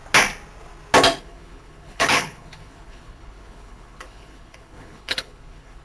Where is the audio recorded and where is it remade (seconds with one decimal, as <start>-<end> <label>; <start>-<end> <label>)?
0.0-1.2 recorded; 1.2-5.8 remade